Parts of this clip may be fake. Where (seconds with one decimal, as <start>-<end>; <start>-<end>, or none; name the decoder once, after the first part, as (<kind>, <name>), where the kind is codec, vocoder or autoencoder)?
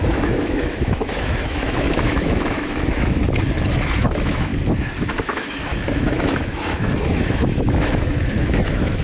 0.0-3.2 (autoencoder, DAC-VAE); 4.0-4.5; 5.1-9.0